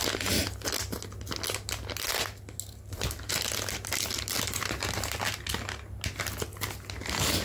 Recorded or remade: recorded